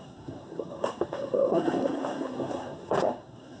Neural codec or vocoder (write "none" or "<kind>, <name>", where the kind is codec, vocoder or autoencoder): codec, SNAC